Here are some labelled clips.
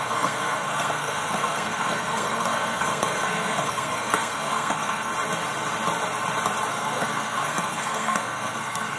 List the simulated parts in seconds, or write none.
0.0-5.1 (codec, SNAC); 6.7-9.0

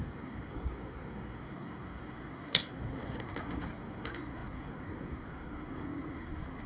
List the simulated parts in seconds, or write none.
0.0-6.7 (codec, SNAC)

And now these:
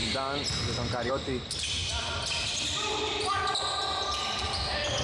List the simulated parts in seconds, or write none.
none

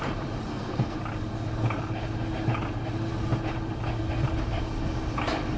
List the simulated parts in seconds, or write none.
0.5-1.0 (codec, SNAC)

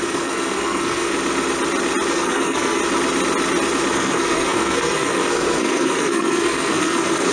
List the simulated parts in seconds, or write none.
0.0-1.1 (codec, SNAC); 2.1-2.8; 3.9-7.3

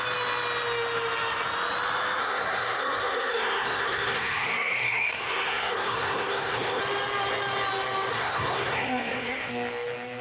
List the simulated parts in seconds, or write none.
2.2-6.8 (codec, SNAC); 8.1-9.5

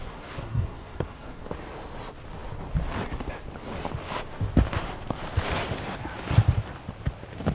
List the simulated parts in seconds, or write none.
0.0-1.4 (codec, SNAC)

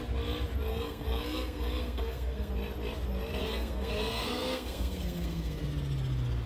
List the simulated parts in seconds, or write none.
0.7-2.5 (codec, SNAC); 3.4-5.6